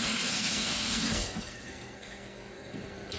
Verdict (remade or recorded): remade